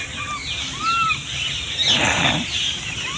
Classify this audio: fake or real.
real